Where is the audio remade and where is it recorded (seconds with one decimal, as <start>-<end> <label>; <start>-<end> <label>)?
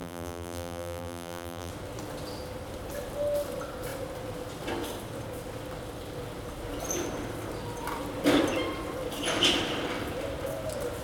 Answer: 0.0-1.7 remade; 1.7-11.0 recorded